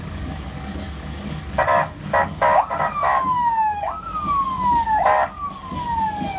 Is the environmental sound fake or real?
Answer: fake